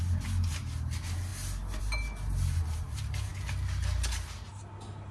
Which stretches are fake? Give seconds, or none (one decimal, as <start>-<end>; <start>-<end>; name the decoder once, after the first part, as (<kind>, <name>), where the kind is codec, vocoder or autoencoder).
none